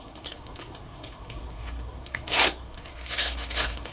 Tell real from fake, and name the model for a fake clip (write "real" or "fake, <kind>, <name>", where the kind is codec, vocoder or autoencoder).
fake, codec, SNAC